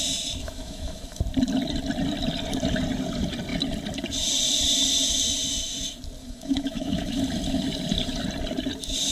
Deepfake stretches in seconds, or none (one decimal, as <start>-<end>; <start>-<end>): 0.4-1.2; 6.2-7.2